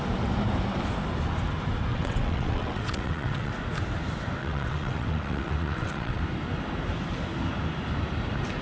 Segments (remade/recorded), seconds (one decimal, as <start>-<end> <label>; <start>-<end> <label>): 0.0-1.9 recorded; 1.9-3.5 remade; 3.5-4.4 recorded; 4.4-6.2 remade; 6.2-8.6 recorded